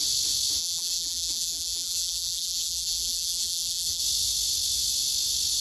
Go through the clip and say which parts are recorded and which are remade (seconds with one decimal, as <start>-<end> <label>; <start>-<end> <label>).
0.0-0.6 recorded; 0.6-4.0 remade; 4.0-5.6 recorded